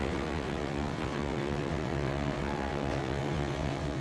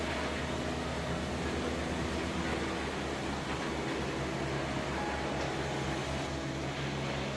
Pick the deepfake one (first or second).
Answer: first